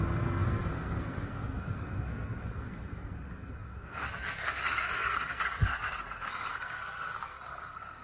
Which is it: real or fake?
fake